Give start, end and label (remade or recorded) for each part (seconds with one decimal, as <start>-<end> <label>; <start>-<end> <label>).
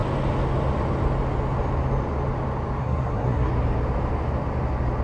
0.0-2.8 recorded; 2.8-3.5 remade; 3.5-5.0 recorded